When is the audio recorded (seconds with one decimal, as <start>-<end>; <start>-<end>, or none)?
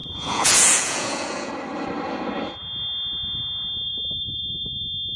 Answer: 1.5-5.2